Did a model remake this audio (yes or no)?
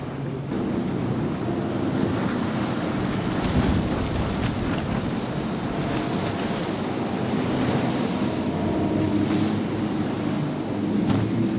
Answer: no